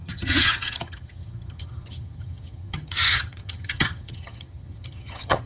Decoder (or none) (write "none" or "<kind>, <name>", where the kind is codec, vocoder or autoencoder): vocoder, HiFi-GAN